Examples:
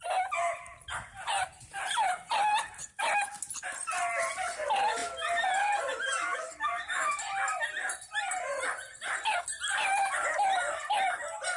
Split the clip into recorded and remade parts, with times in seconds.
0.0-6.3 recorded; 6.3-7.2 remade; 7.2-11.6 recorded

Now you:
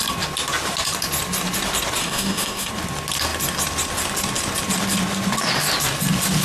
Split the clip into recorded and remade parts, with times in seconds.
0.0-2.0 recorded; 2.0-2.7 remade; 2.7-6.4 recorded